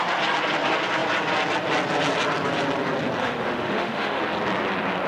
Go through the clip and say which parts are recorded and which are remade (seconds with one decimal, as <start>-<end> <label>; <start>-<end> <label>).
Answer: 0.0-3.2 recorded; 3.2-4.2 remade; 4.2-5.1 recorded

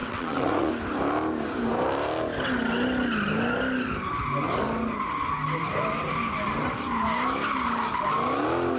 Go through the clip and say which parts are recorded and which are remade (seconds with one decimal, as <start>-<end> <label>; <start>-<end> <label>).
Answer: 0.0-0.7 remade; 0.7-8.8 recorded

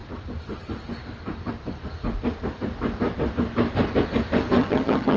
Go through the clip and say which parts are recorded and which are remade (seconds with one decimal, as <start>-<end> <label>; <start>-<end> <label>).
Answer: 0.0-4.6 recorded; 4.6-5.2 remade

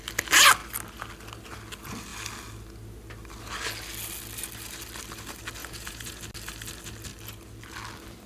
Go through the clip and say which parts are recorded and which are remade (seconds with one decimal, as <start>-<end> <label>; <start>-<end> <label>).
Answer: 0.0-5.6 recorded; 5.6-6.2 remade; 6.2-8.3 recorded

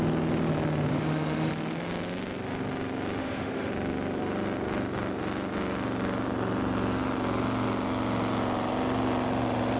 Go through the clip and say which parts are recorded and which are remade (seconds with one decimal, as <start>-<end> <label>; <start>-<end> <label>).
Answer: 0.0-0.9 recorded; 0.9-1.5 remade; 1.5-3.2 recorded; 3.2-3.7 remade; 3.7-9.8 recorded